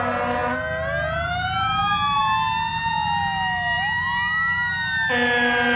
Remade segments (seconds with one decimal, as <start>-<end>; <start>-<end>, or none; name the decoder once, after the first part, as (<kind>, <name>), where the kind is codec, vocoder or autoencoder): none